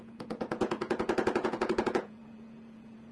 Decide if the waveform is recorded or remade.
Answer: remade